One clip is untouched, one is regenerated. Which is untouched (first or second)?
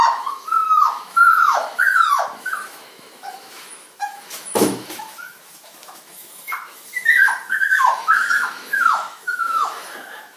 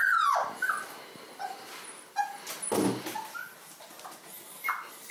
second